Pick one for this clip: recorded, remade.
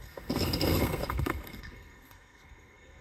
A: remade